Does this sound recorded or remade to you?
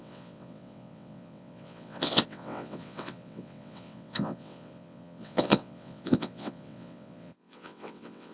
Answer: remade